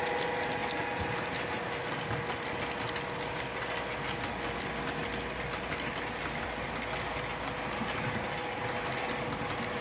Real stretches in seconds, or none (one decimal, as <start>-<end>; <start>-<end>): 0.0-9.8